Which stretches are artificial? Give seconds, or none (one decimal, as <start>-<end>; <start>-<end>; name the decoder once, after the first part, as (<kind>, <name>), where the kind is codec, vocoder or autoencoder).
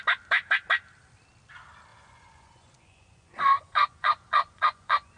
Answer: 1.9-5.2 (vocoder, Vocos)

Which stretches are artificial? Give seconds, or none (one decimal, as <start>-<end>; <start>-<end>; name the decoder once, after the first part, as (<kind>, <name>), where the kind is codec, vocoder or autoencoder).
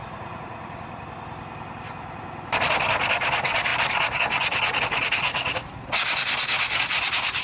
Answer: 0.0-1.0 (vocoder, Vocos)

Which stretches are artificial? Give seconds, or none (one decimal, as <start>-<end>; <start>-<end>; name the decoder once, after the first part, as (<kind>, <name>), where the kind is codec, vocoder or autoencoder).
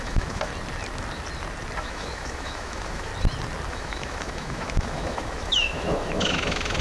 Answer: 0.0-0.5 (autoencoder, DAC-VAE); 1.8-3.1; 3.7-6.8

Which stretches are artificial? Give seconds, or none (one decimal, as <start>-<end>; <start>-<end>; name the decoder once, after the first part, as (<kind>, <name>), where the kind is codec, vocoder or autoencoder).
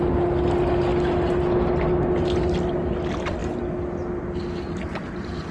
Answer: none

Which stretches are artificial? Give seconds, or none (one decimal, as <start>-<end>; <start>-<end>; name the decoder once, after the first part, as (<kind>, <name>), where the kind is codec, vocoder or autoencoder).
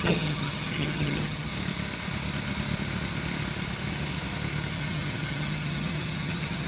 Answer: 0.0-1.5 (vocoder, HiFi-GAN); 4.7-6.7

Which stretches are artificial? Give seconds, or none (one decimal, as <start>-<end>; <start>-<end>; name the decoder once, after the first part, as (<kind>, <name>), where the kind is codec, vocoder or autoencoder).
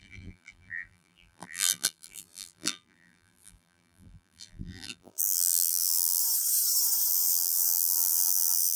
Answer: 0.0-6.2 (vocoder, BigVGAN v2); 7.1-8.8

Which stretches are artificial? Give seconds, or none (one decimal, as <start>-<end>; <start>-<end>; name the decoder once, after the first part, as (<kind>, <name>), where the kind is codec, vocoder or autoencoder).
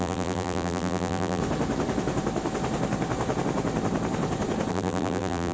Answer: 0.0-1.4 (vocoder, BigVGAN v2); 4.7-5.5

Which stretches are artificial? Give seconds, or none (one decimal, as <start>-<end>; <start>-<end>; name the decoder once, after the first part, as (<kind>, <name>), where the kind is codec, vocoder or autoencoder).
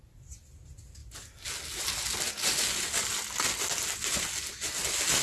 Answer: none